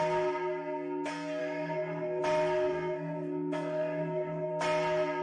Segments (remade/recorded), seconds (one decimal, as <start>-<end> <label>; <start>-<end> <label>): 0.0-1.4 recorded; 1.4-2.2 remade; 2.2-2.7 recorded; 2.7-4.5 remade; 4.5-5.2 recorded

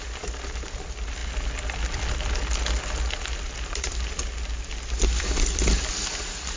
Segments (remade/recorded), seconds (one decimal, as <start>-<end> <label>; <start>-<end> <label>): 0.0-6.6 recorded

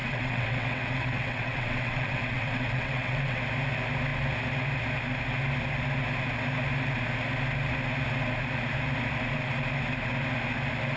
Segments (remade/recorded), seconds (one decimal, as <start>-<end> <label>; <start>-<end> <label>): 0.0-3.4 remade; 3.4-11.0 recorded

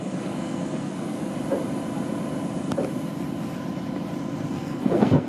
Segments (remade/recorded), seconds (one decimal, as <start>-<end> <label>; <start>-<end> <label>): 0.0-1.3 remade; 1.3-4.5 recorded; 4.5-5.3 remade

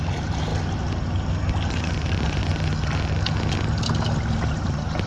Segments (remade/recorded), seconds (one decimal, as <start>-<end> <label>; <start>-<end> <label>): 0.0-0.5 remade; 0.5-1.7 recorded; 1.7-2.4 remade; 2.4-4.5 recorded; 4.5-5.1 remade

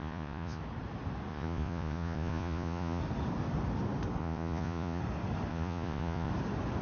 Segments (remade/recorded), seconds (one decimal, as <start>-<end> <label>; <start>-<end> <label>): 0.0-0.6 remade; 0.6-1.3 recorded; 1.3-3.0 remade; 3.0-4.2 recorded; 4.2-5.0 remade; 5.0-5.5 recorded; 5.5-6.3 remade; 6.3-6.8 recorded